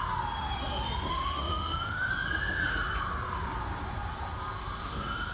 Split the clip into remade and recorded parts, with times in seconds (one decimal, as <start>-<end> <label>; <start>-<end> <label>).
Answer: 0.0-1.1 recorded; 1.1-2.1 remade; 2.1-5.3 recorded